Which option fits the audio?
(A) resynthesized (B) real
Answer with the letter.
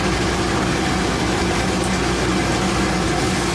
B